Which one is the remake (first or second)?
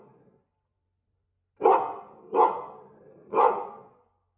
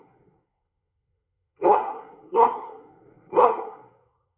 second